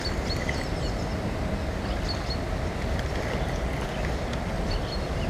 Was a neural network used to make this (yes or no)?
no